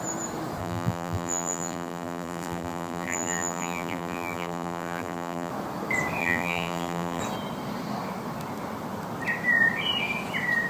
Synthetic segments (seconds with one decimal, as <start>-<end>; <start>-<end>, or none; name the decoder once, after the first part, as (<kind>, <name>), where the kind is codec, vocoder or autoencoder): 0.6-5.5 (vocoder, BigVGAN v2); 6.2-7.2